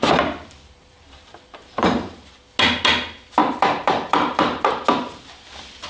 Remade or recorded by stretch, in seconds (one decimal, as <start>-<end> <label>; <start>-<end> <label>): 0.0-0.4 recorded; 0.4-2.4 remade; 2.4-3.4 recorded; 3.4-4.7 remade; 4.7-5.9 recorded

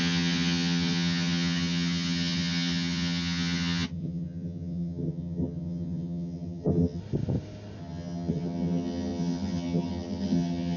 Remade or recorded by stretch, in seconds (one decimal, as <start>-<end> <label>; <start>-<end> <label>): 0.0-7.0 remade; 7.0-7.8 recorded; 7.8-10.8 remade